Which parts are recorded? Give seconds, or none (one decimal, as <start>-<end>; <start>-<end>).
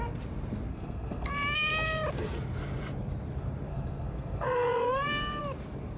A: 0.0-0.7; 1.3-3.7; 5.4-6.0